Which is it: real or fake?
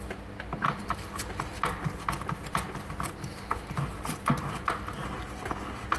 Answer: real